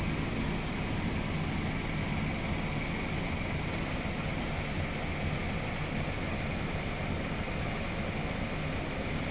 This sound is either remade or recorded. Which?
recorded